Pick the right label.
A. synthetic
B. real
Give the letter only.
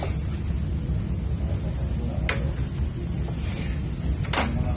B